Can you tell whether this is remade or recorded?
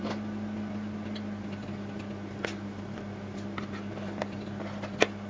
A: recorded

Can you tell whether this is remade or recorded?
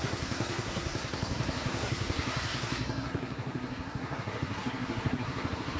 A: remade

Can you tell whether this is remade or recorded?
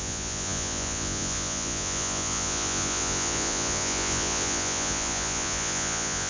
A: remade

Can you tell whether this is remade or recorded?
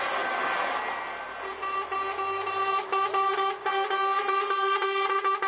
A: recorded